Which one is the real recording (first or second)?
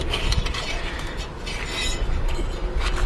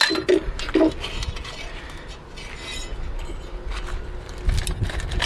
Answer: second